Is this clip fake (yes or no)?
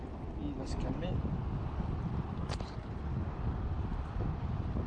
no